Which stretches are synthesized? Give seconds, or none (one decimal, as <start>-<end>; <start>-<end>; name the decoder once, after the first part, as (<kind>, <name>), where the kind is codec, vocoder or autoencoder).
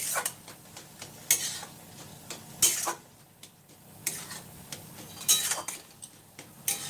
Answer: none